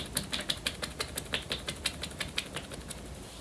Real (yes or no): yes